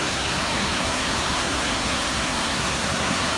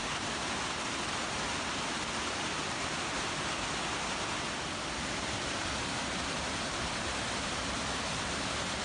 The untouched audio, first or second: second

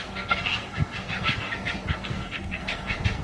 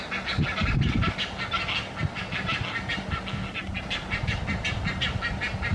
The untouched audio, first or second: second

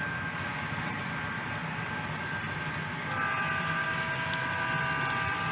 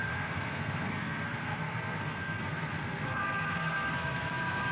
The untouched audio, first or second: first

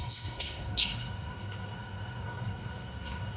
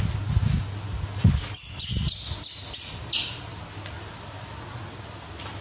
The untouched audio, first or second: second